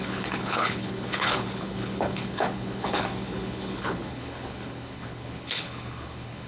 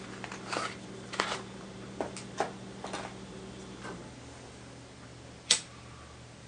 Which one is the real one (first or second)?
second